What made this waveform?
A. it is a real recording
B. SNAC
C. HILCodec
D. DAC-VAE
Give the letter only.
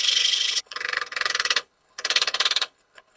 C